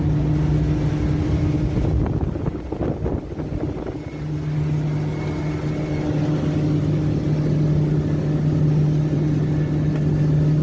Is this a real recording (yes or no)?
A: yes